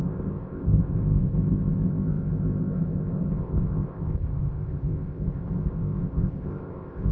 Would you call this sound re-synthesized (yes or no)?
yes